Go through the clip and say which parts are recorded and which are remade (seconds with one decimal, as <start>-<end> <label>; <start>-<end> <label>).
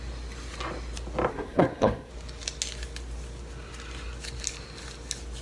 0.0-1.3 recorded; 1.3-2.1 remade; 2.1-5.4 recorded